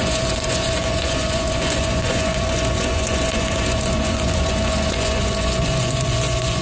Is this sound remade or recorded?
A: remade